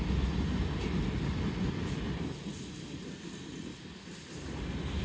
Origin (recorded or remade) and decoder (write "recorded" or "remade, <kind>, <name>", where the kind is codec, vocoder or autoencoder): recorded